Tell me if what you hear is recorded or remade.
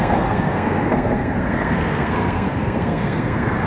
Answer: remade